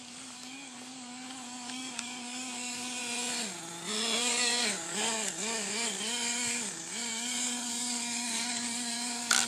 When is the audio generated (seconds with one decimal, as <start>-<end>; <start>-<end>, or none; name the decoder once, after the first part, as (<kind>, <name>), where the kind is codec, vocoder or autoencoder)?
0.0-3.0 (codec, DAC); 4.2-9.5